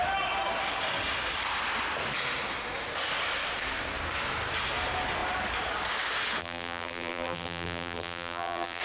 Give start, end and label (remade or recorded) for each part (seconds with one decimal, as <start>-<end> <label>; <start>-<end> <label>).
0.0-6.4 recorded; 6.4-8.8 remade